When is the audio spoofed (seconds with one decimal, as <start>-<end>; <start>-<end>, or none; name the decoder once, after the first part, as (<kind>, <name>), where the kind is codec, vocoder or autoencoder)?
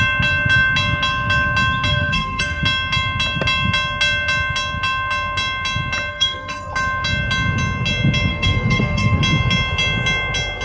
1.9-2.6 (codec, SNAC); 6.1-6.7; 8.3-9.2